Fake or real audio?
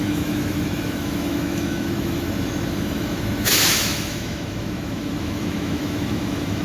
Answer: fake